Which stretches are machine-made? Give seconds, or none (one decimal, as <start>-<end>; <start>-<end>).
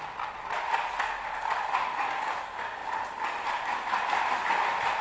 none